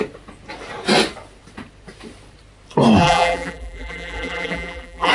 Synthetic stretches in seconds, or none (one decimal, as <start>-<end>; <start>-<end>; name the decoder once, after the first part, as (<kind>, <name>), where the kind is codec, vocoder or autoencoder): 3.0-5.1 (vocoder, BigVGAN v2)